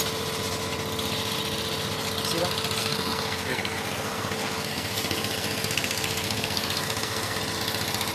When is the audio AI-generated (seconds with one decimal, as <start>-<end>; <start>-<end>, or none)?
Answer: 2.8-7.4